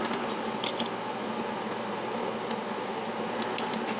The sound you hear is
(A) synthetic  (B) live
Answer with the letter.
B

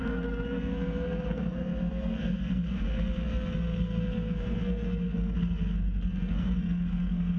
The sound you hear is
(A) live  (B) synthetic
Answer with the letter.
B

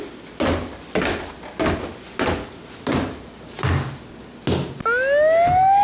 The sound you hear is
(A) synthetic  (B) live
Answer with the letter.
B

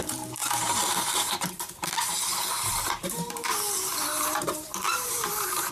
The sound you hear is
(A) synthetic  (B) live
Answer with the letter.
A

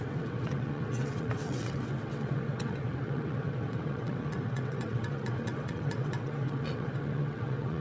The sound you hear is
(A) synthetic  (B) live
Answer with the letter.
A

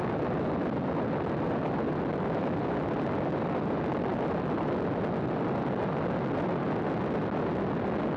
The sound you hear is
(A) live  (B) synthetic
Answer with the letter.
A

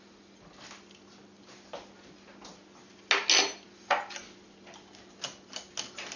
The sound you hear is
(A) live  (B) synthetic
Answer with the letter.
A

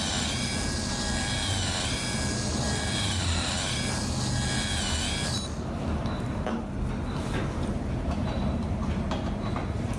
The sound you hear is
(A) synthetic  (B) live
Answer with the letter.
B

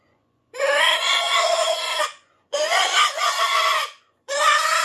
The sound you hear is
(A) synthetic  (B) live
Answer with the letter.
A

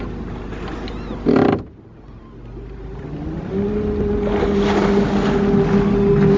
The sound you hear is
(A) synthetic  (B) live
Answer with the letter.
B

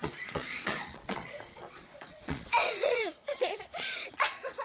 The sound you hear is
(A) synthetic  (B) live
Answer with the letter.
A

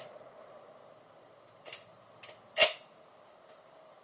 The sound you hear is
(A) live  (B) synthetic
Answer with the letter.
A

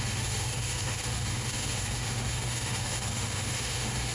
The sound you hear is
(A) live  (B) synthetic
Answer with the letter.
B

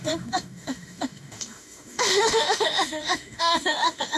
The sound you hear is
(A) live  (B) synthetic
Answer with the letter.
B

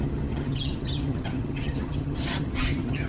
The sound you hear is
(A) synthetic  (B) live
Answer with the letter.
A